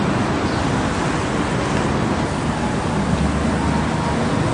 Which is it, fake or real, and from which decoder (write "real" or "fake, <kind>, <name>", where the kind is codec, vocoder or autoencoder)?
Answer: real